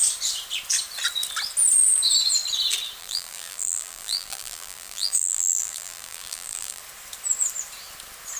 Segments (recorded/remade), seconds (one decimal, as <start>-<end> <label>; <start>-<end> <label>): 0.0-3.0 recorded; 3.0-6.8 remade; 6.8-8.4 recorded